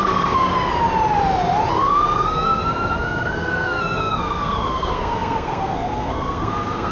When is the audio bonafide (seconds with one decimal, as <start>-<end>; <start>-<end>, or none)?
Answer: 0.5-1.7

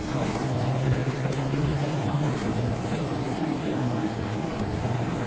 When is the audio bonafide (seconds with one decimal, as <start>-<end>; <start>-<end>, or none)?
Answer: none